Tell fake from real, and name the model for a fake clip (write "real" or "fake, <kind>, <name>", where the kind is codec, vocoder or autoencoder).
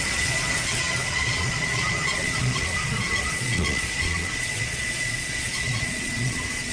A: fake, vocoder, Vocos